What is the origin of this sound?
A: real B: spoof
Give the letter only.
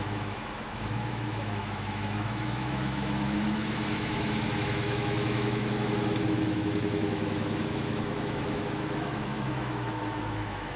B